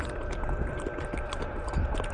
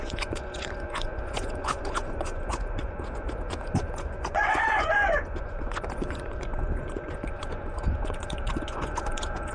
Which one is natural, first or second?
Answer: first